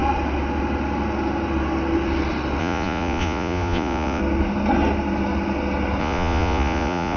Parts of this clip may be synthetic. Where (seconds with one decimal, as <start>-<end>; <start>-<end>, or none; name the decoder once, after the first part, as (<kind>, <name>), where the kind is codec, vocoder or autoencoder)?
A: 2.6-4.2 (vocoder, Vocos); 6.0-7.2